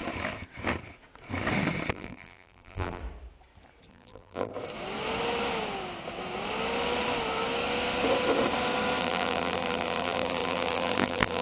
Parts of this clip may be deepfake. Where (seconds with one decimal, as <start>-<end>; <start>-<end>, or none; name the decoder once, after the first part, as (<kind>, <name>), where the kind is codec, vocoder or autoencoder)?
1.9-3.0 (vocoder, BigVGAN v2); 3.9-4.5; 9.0-11.4